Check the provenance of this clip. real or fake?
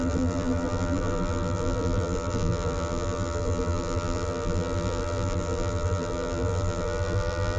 fake